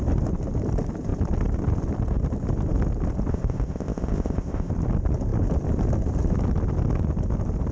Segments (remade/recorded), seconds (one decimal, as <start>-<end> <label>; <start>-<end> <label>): 0.0-3.3 recorded; 3.3-4.7 remade; 4.7-7.7 recorded